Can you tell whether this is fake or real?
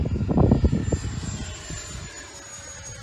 real